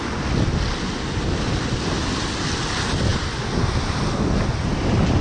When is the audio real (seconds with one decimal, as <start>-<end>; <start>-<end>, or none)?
0.0-5.2